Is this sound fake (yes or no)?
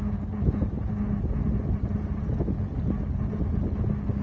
no